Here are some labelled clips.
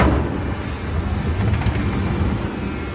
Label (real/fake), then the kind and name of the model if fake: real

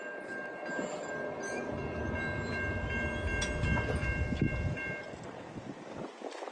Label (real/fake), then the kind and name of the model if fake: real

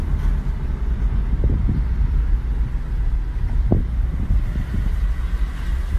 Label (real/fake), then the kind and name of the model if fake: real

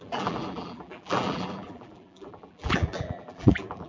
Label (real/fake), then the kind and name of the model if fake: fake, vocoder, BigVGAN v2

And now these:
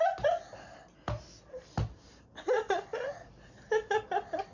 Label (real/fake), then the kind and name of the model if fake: real